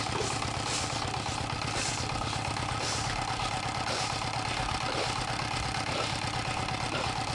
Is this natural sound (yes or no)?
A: yes